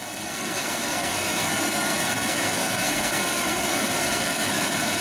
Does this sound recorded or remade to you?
remade